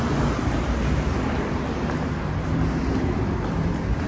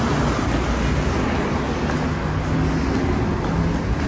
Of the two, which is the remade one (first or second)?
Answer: first